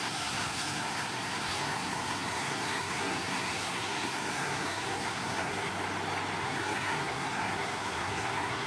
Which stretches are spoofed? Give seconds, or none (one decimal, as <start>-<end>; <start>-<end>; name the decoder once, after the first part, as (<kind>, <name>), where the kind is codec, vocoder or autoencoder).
0.0-5.7 (codec, SNAC); 6.4-8.7